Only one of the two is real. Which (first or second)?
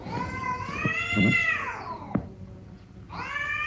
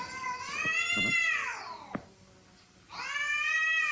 second